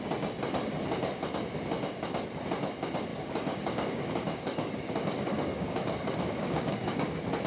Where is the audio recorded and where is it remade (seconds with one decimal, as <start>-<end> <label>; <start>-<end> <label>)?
0.0-3.1 recorded; 3.1-7.1 remade; 7.1-7.5 recorded